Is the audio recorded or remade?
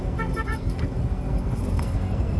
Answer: remade